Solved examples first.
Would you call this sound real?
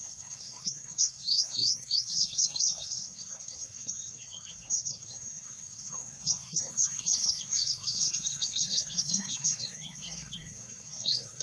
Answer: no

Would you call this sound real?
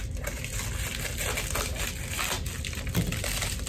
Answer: yes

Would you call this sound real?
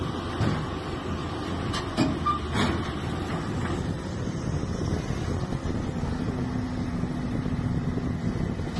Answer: yes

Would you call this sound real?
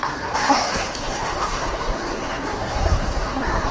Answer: no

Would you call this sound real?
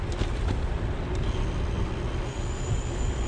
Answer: yes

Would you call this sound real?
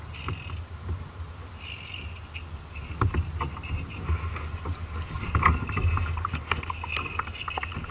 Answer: yes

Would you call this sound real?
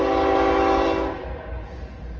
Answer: yes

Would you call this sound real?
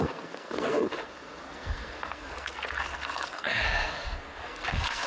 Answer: no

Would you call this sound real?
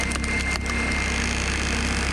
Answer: yes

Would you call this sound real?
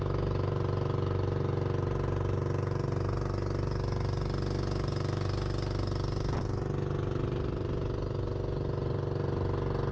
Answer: yes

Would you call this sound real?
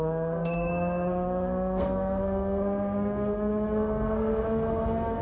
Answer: no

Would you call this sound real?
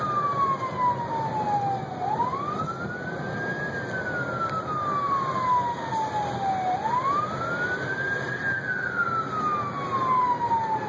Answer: yes